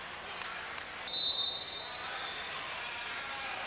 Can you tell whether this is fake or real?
real